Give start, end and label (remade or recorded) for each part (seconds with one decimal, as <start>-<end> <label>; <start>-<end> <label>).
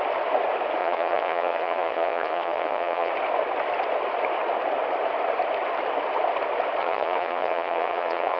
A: 0.0-0.8 recorded; 0.8-3.1 remade; 3.1-6.8 recorded; 6.8-8.4 remade